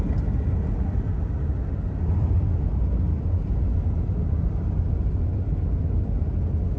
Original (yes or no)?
yes